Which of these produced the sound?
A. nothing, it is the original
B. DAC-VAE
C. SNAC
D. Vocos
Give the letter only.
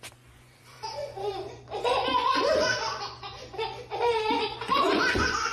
D